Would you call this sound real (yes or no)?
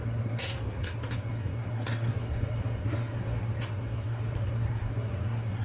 no